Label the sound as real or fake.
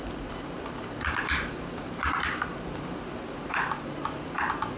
real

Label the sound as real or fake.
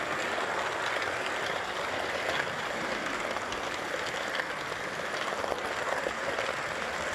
real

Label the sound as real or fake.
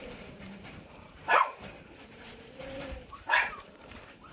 fake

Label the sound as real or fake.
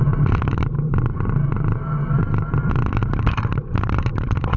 fake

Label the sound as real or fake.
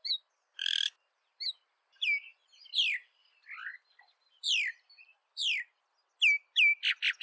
fake